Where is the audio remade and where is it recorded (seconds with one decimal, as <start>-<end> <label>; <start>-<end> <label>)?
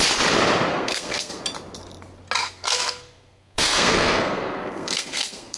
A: 0.0-0.7 recorded; 0.7-1.4 remade; 1.4-2.4 recorded; 2.4-5.6 remade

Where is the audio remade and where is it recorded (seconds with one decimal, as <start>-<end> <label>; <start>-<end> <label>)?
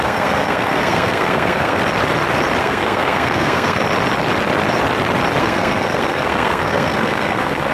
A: 0.0-1.8 remade; 1.8-2.6 recorded; 2.6-3.8 remade; 3.8-5.4 recorded; 5.4-7.7 remade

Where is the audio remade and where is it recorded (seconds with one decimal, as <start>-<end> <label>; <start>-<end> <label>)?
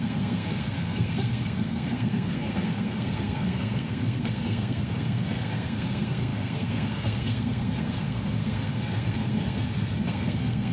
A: 0.0-10.7 remade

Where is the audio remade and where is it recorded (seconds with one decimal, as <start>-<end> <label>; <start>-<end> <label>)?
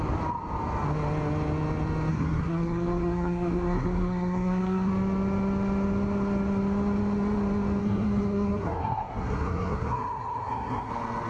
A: 0.0-2.1 recorded; 2.1-4.9 remade; 4.9-7.8 recorded; 7.8-10.9 remade; 10.9-11.3 recorded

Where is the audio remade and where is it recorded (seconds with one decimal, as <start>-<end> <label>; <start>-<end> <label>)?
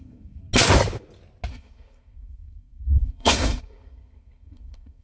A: 0.0-0.4 remade; 0.4-1.5 recorded; 1.5-5.0 remade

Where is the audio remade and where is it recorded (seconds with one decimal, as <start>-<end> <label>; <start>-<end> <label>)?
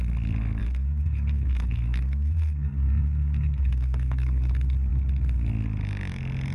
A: 0.0-0.6 recorded; 0.6-4.5 remade; 4.5-6.5 recorded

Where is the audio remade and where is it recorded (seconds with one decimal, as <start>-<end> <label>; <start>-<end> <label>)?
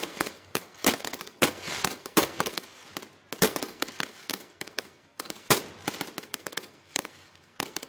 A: 0.0-2.9 remade; 2.9-3.4 recorded; 3.4-5.6 remade; 5.6-6.2 recorded; 6.2-7.9 remade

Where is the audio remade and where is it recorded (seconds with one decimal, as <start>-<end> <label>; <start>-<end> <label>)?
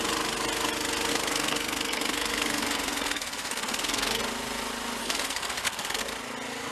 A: 0.0-1.1 recorded; 1.1-4.2 remade; 4.2-5.0 recorded; 5.0-6.0 remade; 6.0-6.7 recorded